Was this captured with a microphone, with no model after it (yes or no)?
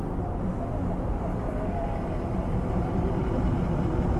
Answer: yes